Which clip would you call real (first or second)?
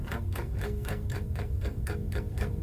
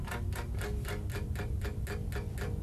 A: second